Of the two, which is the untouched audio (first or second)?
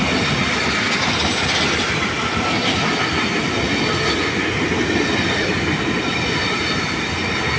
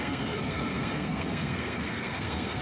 first